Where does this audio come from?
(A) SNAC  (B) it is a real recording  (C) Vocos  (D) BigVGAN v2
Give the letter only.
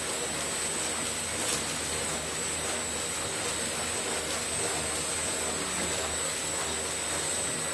B